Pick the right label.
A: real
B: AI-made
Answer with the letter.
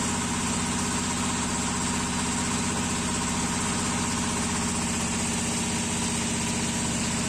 A